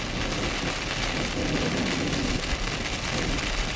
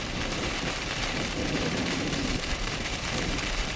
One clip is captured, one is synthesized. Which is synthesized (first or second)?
second